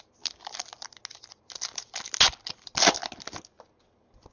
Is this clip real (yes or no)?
yes